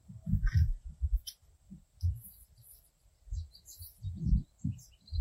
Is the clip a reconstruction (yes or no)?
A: no